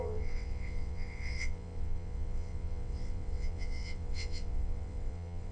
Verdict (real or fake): fake